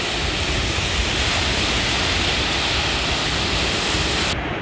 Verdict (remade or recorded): recorded